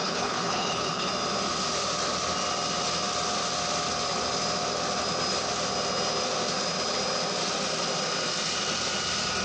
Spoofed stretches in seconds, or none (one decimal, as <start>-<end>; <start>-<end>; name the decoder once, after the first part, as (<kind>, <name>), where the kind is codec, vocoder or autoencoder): 0.0-1.1 (codec, HILCodec)